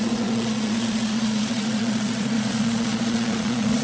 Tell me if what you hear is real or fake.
fake